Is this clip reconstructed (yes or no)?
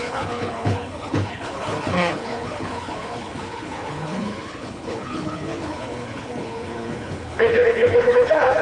yes